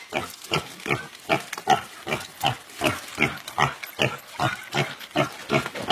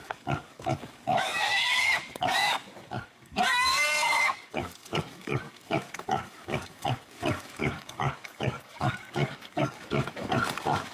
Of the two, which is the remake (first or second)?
second